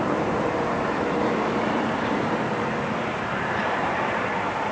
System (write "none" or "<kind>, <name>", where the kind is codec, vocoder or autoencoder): vocoder, BigVGAN v2